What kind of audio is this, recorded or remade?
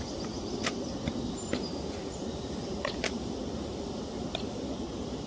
recorded